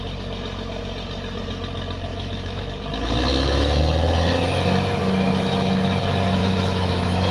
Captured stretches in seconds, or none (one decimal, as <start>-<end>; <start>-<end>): 0.0-2.1; 2.6-3.3; 3.8-5.0; 6.0-6.4